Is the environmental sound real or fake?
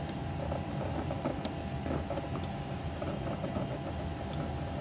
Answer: real